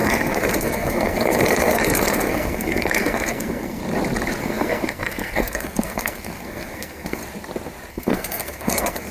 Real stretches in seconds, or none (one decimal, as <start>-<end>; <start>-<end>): 3.8-4.4; 7.2-7.9